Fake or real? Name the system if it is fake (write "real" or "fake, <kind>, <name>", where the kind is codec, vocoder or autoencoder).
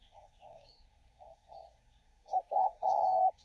fake, codec, SNAC